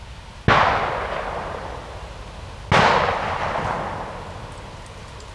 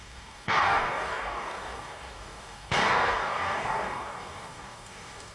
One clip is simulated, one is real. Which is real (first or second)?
first